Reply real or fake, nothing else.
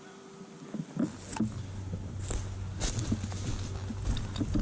real